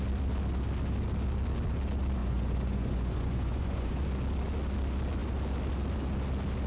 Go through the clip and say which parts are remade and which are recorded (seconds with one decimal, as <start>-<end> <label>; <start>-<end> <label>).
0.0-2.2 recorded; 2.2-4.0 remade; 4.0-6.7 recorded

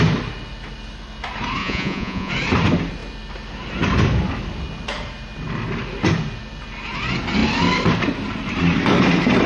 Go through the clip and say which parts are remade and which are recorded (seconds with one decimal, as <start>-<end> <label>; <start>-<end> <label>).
0.0-1.6 recorded; 1.6-2.3 remade; 2.3-9.5 recorded

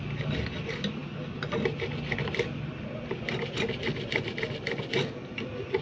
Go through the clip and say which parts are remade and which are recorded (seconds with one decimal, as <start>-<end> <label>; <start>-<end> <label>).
0.0-5.8 recorded

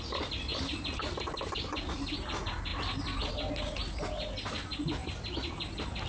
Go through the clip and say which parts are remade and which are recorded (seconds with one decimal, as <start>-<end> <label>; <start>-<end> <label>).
0.0-6.1 recorded

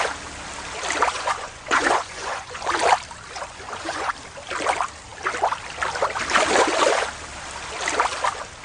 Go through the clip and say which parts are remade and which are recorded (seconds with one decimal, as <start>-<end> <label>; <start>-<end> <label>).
0.0-1.1 recorded; 1.1-2.6 remade; 2.6-3.4 recorded; 3.4-4.1 remade; 4.1-8.6 recorded

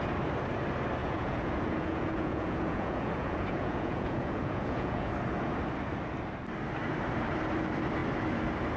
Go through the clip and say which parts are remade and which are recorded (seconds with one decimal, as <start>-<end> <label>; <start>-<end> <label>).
0.0-1.0 recorded; 1.0-5.1 remade; 5.1-8.8 recorded

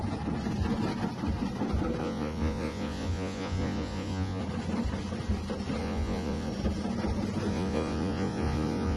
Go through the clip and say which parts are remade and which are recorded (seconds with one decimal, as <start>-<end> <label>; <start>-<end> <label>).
0.0-2.0 recorded; 2.0-4.4 remade; 4.4-5.8 recorded; 5.8-6.5 remade; 6.5-7.5 recorded; 7.5-9.0 remade